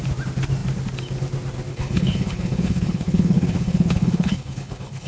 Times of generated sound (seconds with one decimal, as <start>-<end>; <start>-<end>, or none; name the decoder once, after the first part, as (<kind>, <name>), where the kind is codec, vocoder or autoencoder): 1.7-5.1 (codec, HILCodec)